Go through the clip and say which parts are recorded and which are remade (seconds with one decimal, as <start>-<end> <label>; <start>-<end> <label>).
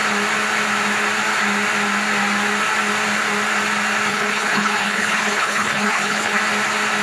0.0-4.1 recorded; 4.1-6.4 remade; 6.4-7.0 recorded